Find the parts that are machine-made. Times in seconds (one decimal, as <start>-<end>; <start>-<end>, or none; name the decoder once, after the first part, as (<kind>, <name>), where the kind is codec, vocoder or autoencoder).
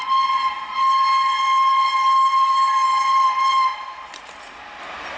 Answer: none